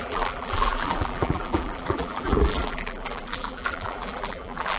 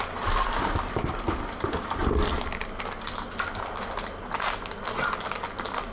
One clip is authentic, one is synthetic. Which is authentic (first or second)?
second